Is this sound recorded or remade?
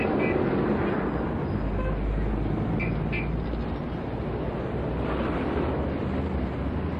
recorded